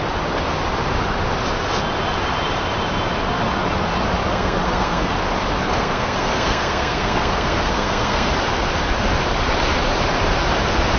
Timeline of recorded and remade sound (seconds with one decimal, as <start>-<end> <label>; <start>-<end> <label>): 0.0-4.3 recorded; 4.3-5.1 remade; 5.1-5.8 recorded; 5.8-8.3 remade; 8.3-11.0 recorded